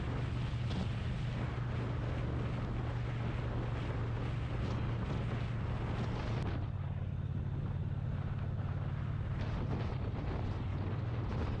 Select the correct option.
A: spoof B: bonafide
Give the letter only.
B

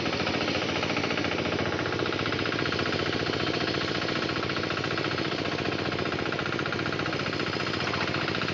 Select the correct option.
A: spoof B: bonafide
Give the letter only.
B